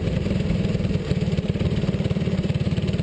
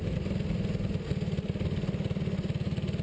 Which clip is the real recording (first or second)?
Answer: second